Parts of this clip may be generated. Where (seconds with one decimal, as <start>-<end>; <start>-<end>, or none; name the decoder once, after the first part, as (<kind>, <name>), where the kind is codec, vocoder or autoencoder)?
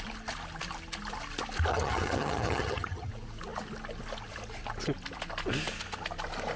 1.7-3.1 (vocoder, HiFi-GAN)